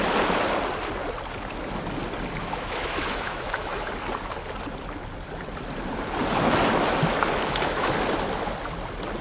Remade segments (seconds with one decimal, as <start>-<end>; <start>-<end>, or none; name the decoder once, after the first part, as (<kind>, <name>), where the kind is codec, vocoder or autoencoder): 2.4-3.9 (autoencoder, DAC-VAE); 7.4-7.9